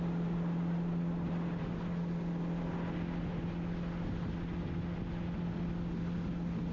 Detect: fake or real real